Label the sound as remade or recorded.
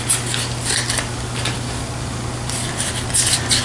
recorded